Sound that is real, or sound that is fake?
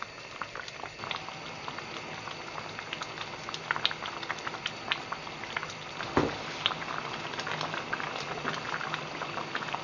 real